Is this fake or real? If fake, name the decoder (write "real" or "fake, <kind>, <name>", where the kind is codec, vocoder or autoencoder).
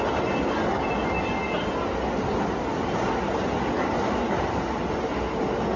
real